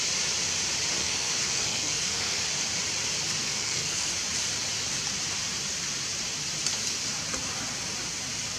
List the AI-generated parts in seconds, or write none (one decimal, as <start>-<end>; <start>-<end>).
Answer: 1.0-2.4; 3.4-4.1